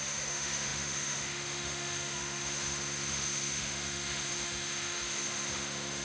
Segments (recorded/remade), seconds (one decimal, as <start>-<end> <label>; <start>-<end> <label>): 0.0-6.0 remade